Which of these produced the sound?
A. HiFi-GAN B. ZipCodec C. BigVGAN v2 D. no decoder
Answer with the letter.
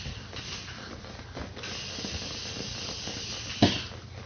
D